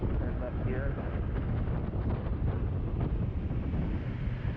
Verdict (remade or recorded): recorded